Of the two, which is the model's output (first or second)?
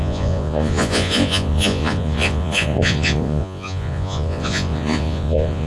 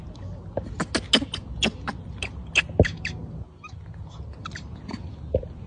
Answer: first